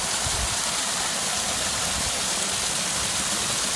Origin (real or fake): real